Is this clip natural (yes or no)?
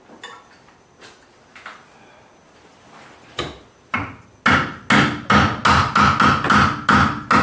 yes